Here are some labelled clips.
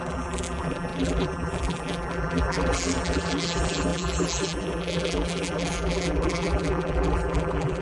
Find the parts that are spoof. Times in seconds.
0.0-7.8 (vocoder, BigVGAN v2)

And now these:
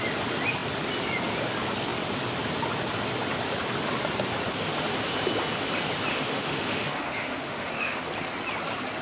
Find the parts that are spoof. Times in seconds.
6.1-8.0 (autoencoder, DAC-VAE)